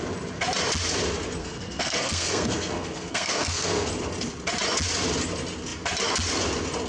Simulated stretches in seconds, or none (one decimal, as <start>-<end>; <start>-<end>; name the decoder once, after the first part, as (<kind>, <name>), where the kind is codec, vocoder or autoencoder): 1.4-3.9 (codec, SNAC)